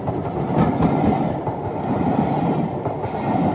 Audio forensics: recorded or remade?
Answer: recorded